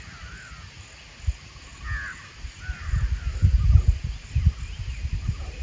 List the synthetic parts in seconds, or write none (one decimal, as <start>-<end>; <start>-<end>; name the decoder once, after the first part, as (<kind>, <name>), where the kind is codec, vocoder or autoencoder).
none